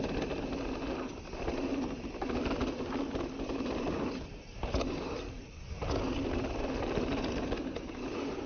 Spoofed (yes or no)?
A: no